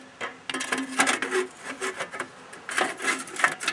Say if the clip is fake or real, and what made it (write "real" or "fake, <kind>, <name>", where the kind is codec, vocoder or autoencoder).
real